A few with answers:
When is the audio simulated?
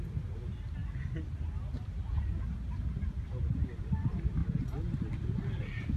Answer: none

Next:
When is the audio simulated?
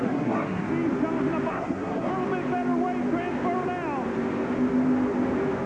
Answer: 0.0-0.7 (codec, SNAC); 1.5-2.1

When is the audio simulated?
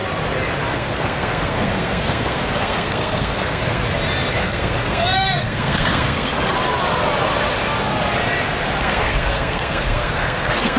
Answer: 0.7-3.8 (codec, SNAC); 4.3-6.3; 8.8-10.8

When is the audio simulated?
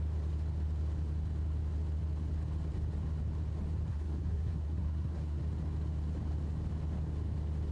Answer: 3.9-5.4 (codec, SNAC)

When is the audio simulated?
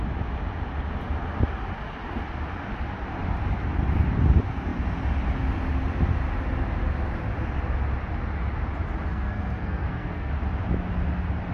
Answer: 9.1-10.3 (codec, SNAC)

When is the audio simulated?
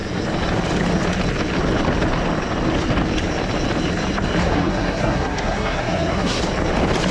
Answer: 4.4-6.4 (codec, SNAC)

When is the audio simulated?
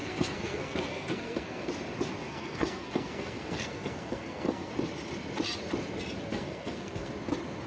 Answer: 0.0-1.7 (codec, SNAC); 2.2-4.7; 6.3-7.1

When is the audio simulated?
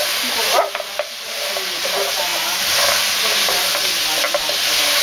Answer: none